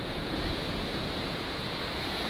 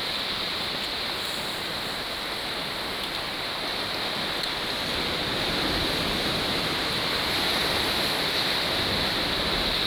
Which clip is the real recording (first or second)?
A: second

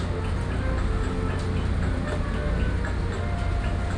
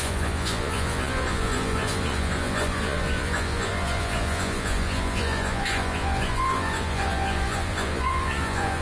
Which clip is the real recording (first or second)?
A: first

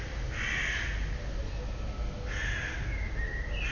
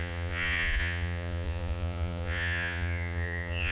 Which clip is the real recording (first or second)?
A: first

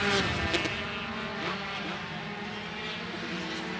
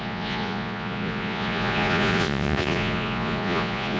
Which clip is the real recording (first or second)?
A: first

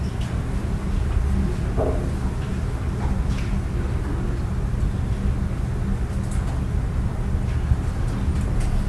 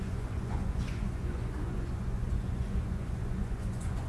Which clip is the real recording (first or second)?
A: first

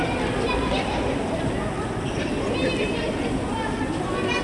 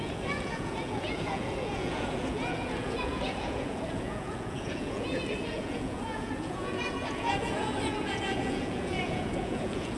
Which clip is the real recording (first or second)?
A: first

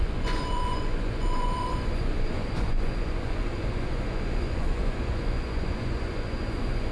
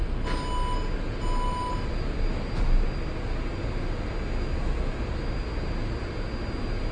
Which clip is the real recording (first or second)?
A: second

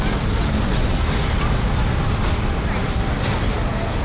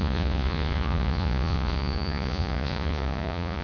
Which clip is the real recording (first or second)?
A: first